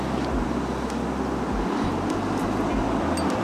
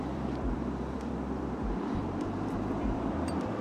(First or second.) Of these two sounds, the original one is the first